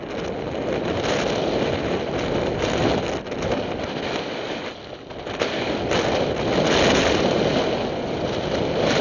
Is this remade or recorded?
recorded